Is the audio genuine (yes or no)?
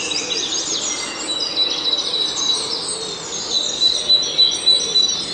yes